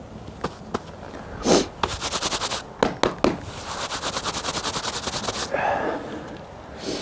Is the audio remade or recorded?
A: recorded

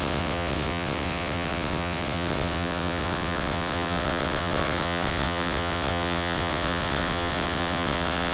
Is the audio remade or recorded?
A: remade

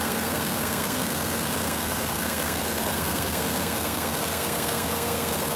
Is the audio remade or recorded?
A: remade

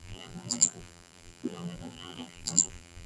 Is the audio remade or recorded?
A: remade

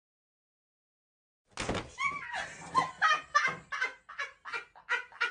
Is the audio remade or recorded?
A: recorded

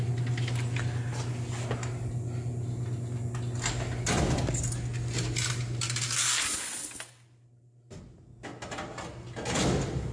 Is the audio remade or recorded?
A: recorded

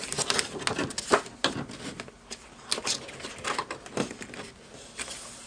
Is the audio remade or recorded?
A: recorded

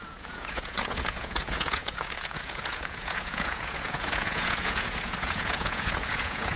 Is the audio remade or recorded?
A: remade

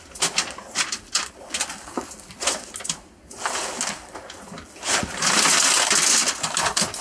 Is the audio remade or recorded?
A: recorded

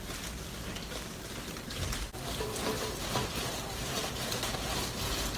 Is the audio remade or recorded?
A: recorded